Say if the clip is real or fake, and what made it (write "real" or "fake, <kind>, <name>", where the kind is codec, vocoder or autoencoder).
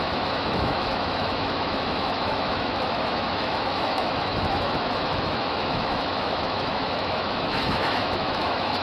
fake, autoencoder, DAC-VAE